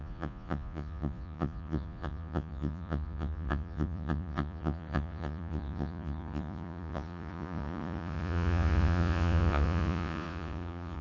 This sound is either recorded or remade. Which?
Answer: remade